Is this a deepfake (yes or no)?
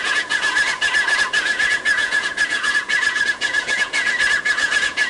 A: yes